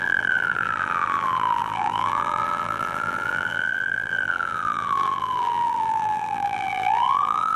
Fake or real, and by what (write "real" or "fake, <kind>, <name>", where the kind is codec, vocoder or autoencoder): fake, vocoder, BigVGAN v2